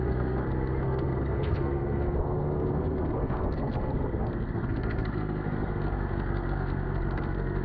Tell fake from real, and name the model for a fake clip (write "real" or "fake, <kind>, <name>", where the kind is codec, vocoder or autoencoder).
fake, codec, SNAC